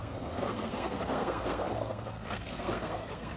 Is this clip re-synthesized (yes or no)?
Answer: yes